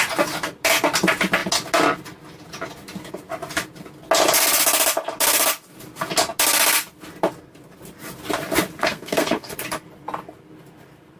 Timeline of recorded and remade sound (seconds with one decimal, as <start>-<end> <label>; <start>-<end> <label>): 0.0-8.8 recorded; 8.8-9.5 remade; 9.5-11.2 recorded